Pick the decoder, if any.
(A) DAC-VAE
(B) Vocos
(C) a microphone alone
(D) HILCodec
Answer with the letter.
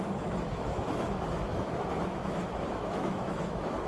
A